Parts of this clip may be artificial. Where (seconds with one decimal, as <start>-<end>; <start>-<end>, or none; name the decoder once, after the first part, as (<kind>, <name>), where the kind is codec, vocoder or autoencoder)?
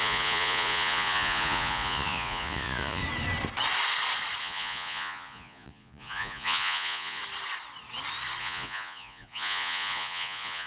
0.0-3.0 (vocoder, Vocos); 4.4-7.2; 8.4-10.7